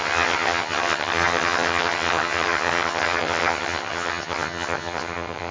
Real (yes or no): no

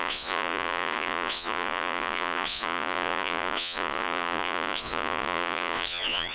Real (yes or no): no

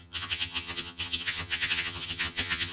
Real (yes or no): no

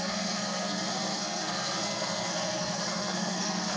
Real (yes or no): no